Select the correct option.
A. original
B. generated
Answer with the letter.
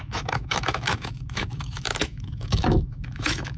B